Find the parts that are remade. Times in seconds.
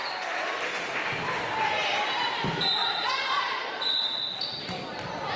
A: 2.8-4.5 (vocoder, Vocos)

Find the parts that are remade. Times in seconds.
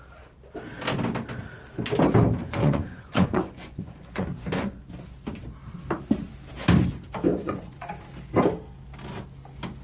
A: 2.4-4.8 (vocoder, Vocos); 7.3-7.9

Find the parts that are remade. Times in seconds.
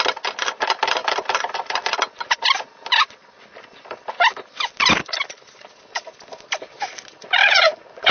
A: 7.4-8.1 (vocoder, Vocos)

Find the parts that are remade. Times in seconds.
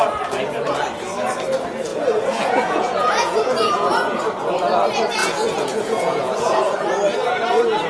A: 1.9-3.9 (vocoder, Vocos); 5.2-6.9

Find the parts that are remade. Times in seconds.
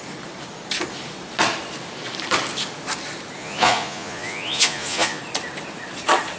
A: 3.4-5.2 (vocoder, Vocos)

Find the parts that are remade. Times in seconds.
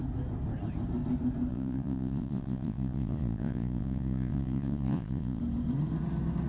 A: 1.5-5.4 (vocoder, Vocos)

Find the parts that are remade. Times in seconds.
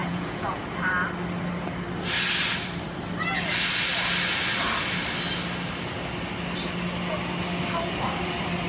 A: 0.0-0.6 (vocoder, Vocos)